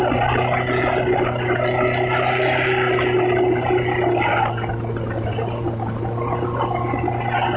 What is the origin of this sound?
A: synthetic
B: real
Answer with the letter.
B